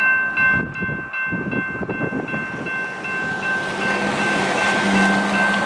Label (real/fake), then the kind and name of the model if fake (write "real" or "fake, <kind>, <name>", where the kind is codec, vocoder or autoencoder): real